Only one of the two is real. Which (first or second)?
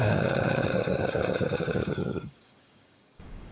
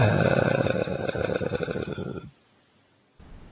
second